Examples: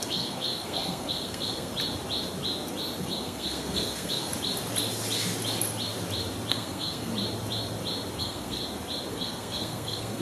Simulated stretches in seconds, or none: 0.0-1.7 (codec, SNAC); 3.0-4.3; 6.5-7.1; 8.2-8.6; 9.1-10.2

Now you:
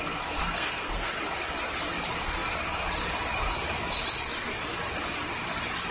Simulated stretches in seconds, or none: 0.4-1.1 (codec, SNAC)